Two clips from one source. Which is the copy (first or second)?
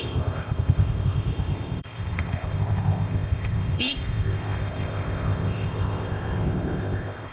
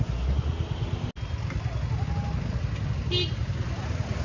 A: first